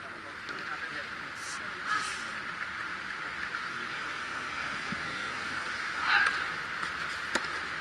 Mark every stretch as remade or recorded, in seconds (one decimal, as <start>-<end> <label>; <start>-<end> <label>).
0.0-3.7 recorded; 3.7-5.7 remade; 5.7-7.8 recorded